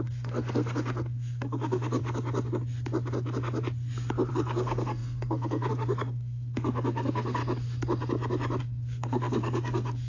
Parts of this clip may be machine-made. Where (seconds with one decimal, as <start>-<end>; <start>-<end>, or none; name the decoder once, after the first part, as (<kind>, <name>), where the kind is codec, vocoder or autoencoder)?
0.0-2.0 (codec, SNAC); 4.3-7.4; 8.6-10.1